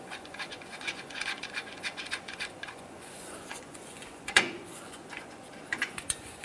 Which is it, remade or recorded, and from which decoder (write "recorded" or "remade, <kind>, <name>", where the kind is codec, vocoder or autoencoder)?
remade, vocoder, Vocos